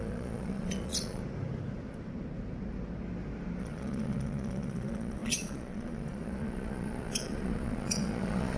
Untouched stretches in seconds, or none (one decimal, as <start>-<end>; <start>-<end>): 1.2-3.6